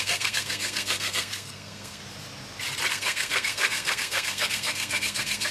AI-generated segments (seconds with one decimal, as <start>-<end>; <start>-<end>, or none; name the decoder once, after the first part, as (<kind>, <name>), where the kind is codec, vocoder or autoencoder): 0.0-2.0 (codec, SNAC); 2.9-5.5